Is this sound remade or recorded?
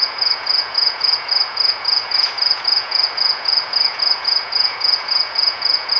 remade